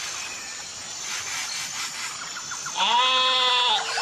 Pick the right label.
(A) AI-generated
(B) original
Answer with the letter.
B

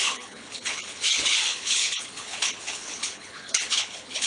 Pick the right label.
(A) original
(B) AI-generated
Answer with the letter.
B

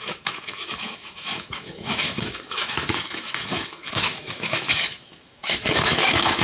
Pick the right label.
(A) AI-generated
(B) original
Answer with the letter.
A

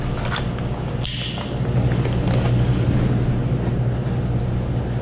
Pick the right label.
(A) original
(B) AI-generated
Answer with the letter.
A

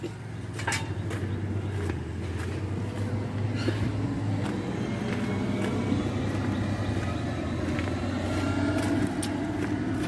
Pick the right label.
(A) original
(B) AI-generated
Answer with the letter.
A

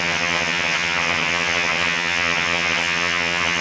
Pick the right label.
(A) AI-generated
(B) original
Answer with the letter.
A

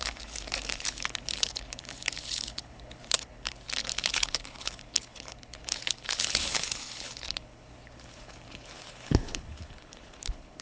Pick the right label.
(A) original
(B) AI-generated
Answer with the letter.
B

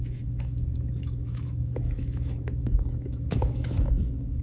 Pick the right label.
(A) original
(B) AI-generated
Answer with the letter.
B